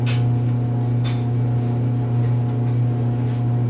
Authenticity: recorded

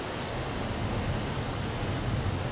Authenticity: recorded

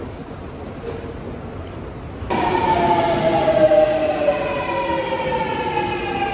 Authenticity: recorded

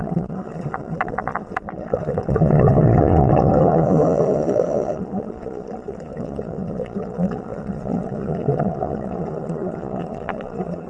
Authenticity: remade